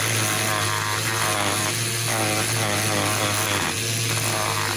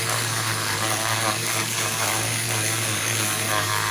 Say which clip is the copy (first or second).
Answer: second